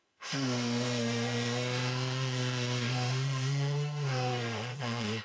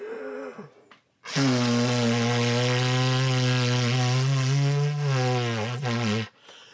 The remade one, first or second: first